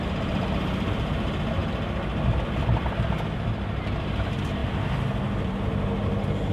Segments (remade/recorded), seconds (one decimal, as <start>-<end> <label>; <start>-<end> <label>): 0.0-6.5 recorded